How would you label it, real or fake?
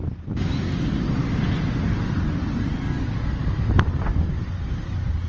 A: real